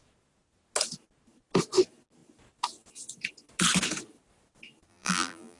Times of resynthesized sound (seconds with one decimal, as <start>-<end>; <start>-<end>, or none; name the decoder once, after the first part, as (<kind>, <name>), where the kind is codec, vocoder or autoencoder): 4.9-5.6 (vocoder, BigVGAN v2)